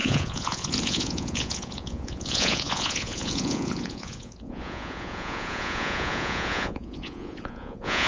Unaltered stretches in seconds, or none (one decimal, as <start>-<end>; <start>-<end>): none